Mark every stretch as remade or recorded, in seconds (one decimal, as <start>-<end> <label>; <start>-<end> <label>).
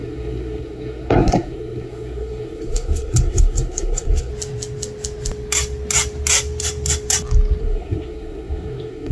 0.0-4.3 remade; 4.3-7.6 recorded; 7.6-9.1 remade